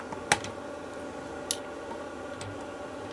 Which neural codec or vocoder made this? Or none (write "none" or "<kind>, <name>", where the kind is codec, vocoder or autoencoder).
none